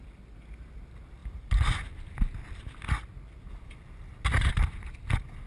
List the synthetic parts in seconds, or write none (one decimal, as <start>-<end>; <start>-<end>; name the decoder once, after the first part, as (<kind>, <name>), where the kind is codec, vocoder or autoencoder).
none